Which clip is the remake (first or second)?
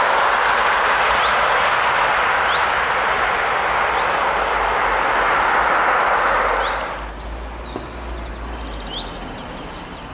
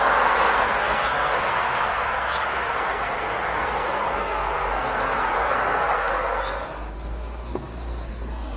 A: second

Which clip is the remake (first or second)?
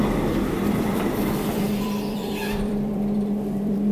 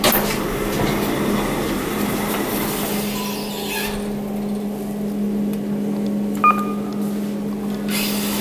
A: first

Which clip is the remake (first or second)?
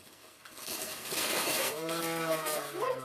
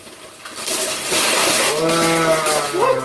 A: first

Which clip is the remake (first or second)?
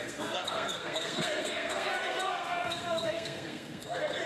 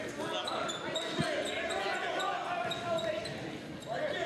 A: first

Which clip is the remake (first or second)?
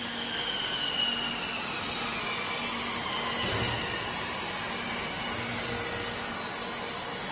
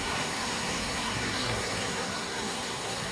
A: second